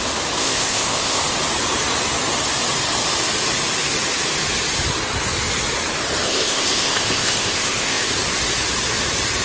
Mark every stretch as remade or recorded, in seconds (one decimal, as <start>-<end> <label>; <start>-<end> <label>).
0.0-0.4 recorded; 0.4-1.2 remade; 1.2-6.2 recorded; 6.2-8.1 remade; 8.1-9.4 recorded